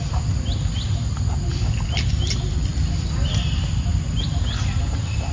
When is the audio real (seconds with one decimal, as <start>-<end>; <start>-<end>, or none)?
0.0-5.3